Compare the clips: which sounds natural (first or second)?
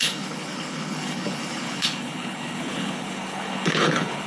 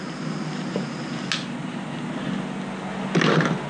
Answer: second